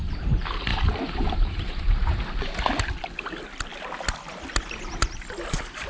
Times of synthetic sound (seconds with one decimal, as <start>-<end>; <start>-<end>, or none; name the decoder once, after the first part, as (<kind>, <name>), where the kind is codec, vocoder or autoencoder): 0.7-2.2 (vocoder, BigVGAN v2)